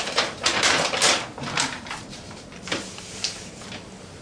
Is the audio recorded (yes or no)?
no